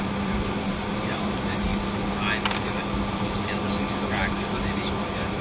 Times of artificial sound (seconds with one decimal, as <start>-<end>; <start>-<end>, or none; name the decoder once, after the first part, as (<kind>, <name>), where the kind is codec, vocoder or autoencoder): 0.0-1.7 (vocoder, BigVGAN v2); 4.9-5.4